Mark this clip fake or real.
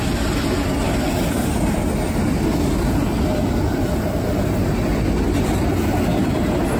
real